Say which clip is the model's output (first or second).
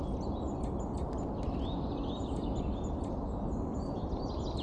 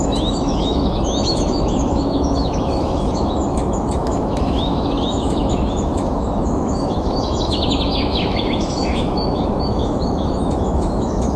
second